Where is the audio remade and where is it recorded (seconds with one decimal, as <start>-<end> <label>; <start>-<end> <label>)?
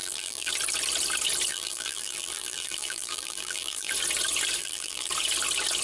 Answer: 0.0-0.5 remade; 0.5-1.5 recorded; 1.5-3.9 remade; 3.9-4.6 recorded; 4.6-5.1 remade; 5.1-5.8 recorded